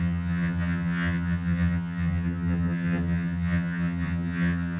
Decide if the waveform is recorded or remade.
remade